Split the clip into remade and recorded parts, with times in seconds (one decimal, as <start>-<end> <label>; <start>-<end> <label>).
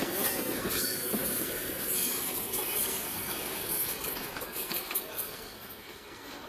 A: 0.0-6.5 remade